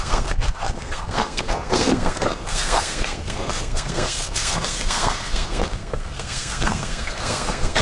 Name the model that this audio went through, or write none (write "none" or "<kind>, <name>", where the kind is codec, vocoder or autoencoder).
codec, SNAC